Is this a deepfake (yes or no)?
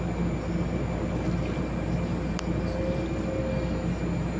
no